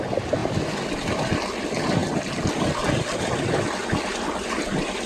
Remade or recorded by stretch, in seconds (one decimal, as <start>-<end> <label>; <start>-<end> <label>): 0.0-5.1 recorded